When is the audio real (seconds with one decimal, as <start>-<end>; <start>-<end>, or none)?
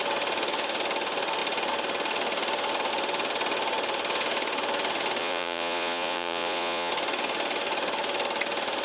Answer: 0.0-5.2; 6.9-8.8